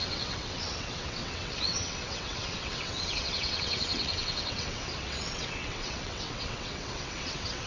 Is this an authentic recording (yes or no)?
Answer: no